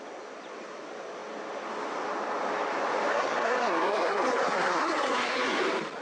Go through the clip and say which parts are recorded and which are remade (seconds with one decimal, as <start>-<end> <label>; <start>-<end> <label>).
0.0-3.1 recorded; 3.1-5.6 remade; 5.6-6.0 recorded